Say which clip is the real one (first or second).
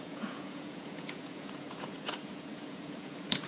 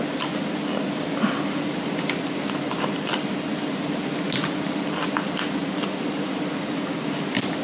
second